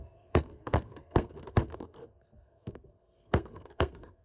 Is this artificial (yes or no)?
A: yes